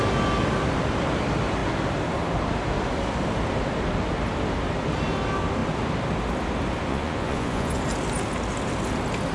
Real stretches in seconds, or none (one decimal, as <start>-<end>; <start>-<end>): 0.0-6.9; 7.8-9.3